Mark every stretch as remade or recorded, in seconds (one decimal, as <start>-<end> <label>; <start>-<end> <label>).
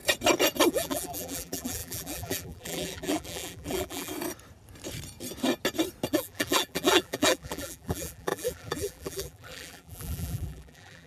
0.0-0.7 recorded; 0.7-4.1 remade; 4.1-6.1 recorded; 6.1-11.1 remade